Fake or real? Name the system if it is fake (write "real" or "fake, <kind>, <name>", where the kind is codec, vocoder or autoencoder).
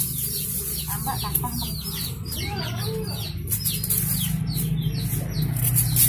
real